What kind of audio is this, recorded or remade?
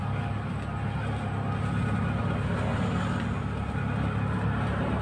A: recorded